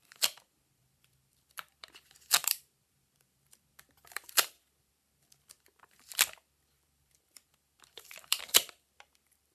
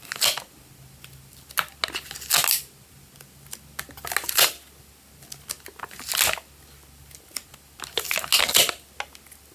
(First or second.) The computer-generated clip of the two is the first